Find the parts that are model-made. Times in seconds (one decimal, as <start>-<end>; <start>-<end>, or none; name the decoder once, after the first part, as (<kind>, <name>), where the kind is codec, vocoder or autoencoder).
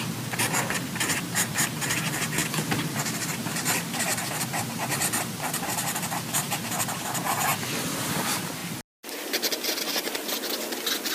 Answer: 2.4-5.2 (vocoder, BigVGAN v2)